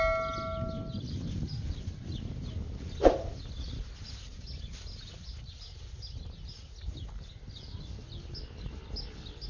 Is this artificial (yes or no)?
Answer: no